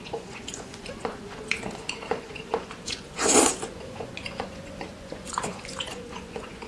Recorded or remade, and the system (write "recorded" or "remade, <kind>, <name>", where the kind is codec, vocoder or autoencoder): remade, vocoder, Vocos